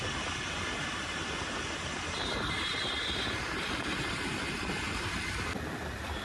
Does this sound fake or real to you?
fake